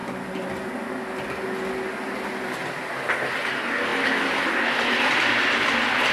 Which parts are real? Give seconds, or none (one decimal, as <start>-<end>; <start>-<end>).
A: 0.0-6.1